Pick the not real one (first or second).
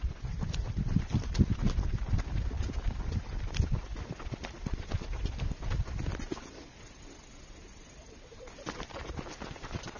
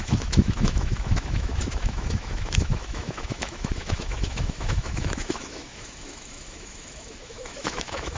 second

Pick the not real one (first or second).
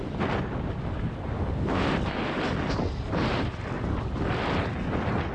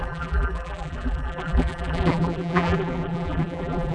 second